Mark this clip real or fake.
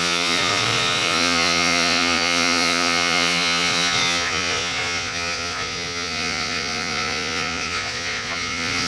fake